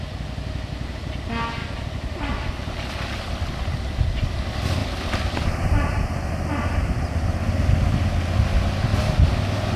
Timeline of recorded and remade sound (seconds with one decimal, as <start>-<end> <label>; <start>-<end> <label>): 0.0-1.6 recorded; 1.6-2.5 remade; 2.5-4.8 recorded; 4.8-6.3 remade; 6.3-8.9 recorded; 8.9-9.8 remade